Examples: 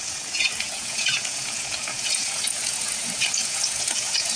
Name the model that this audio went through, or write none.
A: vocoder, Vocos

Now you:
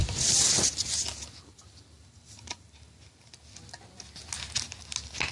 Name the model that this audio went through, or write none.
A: none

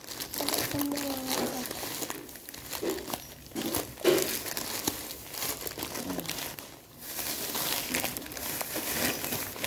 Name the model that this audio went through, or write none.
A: none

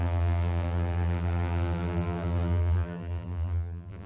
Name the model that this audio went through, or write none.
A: vocoder, BigVGAN v2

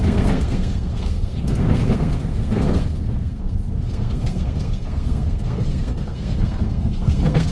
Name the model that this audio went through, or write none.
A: codec, SNAC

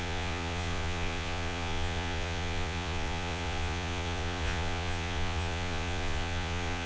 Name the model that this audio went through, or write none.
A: vocoder, Vocos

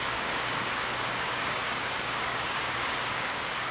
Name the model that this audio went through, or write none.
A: codec, DAC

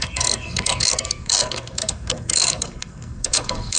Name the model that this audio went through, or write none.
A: codec, SNAC